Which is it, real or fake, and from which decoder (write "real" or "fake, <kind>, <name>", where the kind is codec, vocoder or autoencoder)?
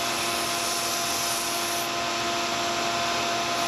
real